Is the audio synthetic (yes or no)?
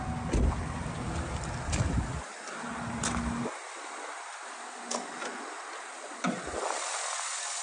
no